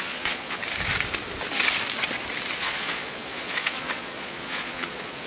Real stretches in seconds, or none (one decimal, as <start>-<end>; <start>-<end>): 0.6-2.6